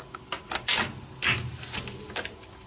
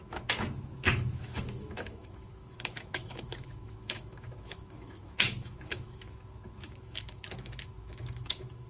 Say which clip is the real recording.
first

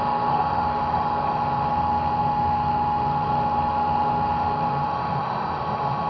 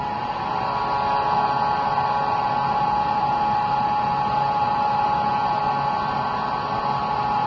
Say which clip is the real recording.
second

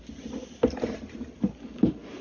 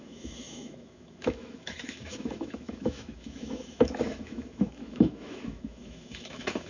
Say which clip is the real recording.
first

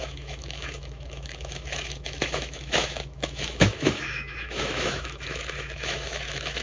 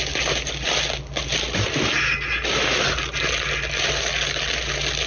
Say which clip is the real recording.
second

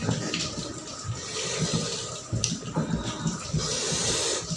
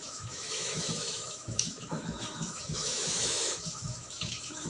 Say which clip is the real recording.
first